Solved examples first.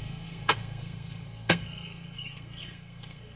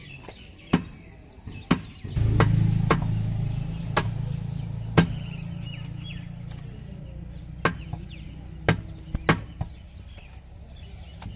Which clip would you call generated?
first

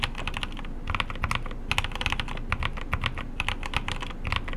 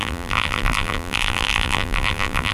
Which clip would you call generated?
second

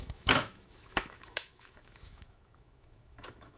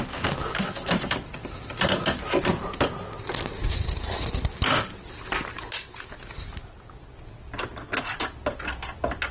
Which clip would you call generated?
first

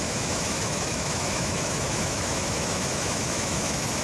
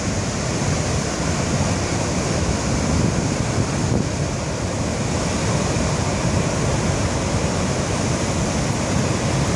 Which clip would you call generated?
first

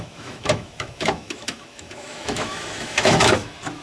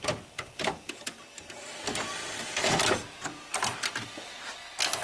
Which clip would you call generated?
first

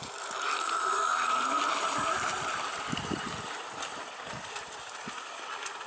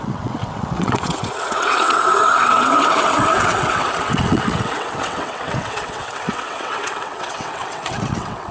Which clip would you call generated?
second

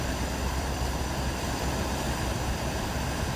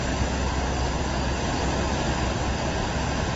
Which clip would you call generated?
first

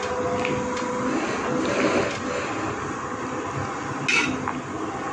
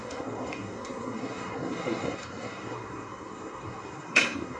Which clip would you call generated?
second